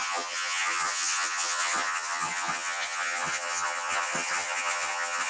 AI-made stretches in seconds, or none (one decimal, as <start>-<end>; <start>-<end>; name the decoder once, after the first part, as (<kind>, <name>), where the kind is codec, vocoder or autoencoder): 0.0-5.3 (vocoder, HiFi-GAN)